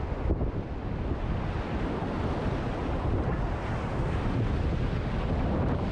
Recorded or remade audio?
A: recorded